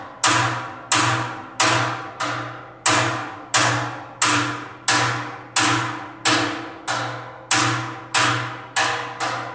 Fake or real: real